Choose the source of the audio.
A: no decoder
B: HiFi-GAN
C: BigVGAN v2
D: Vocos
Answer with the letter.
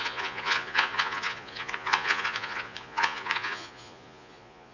D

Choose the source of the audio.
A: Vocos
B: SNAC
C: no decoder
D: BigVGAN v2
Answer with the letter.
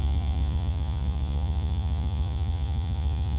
A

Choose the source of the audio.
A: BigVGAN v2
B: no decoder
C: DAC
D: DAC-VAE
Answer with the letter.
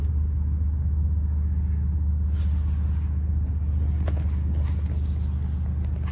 B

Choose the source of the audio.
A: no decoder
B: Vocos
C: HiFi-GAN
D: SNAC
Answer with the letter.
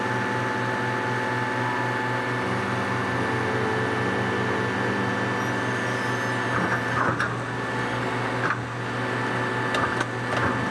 A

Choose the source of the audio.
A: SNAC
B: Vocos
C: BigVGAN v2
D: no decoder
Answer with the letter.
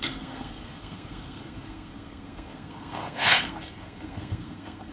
A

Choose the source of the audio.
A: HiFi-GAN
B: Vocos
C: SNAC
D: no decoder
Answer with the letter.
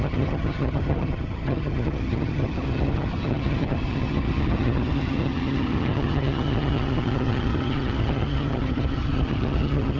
A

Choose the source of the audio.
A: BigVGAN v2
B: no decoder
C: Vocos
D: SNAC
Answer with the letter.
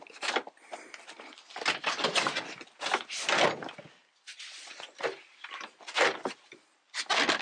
B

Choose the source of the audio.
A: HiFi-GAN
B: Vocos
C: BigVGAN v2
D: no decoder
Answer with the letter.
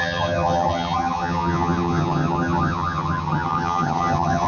A